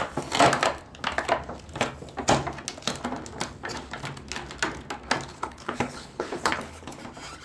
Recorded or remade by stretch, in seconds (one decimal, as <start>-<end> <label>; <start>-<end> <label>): 0.0-5.3 recorded; 5.3-7.0 remade; 7.0-7.4 recorded